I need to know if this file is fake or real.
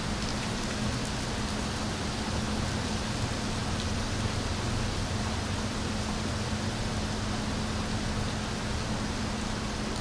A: real